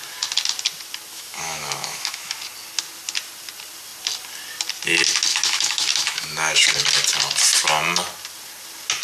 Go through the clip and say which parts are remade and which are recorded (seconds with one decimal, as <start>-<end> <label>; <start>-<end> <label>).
0.0-1.1 recorded; 1.1-2.4 remade; 2.4-5.3 recorded; 5.3-6.8 remade; 6.8-9.0 recorded